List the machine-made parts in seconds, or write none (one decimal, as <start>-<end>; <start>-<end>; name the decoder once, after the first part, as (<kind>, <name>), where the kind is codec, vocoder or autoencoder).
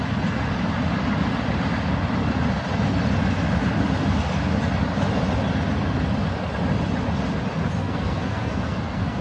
7.8-9.2 (codec, SNAC)